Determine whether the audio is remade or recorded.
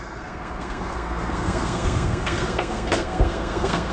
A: remade